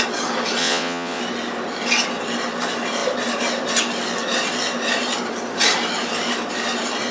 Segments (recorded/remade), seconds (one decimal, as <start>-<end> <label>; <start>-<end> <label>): 0.0-0.6 recorded; 0.6-1.2 remade; 1.2-7.1 recorded